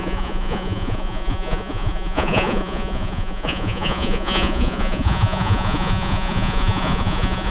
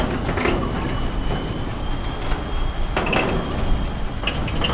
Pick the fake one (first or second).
first